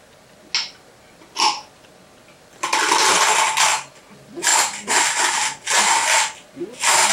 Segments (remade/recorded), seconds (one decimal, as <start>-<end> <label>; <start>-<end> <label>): 0.0-7.1 recorded